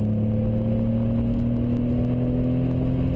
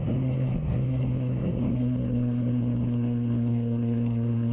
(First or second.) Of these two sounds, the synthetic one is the second